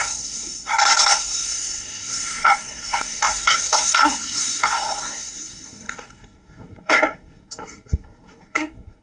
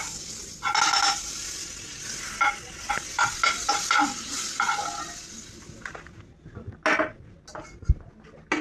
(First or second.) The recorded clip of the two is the second